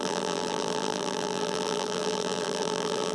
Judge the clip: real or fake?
fake